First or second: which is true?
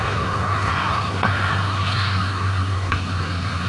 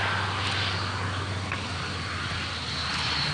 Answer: second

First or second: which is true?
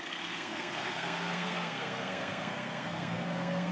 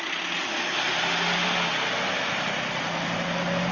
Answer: second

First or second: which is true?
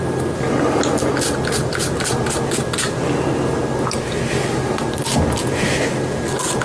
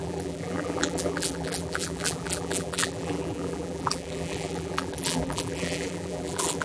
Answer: first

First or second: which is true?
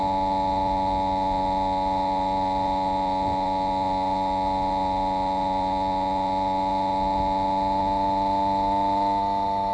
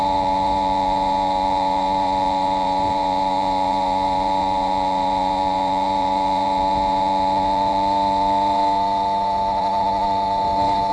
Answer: first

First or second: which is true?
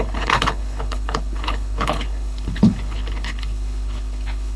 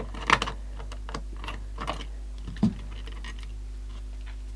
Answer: second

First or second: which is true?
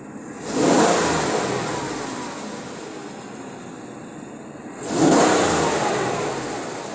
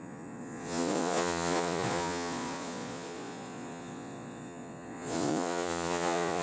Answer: first